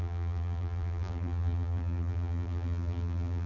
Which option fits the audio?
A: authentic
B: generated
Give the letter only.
B